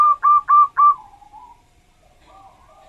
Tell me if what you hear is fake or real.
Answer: fake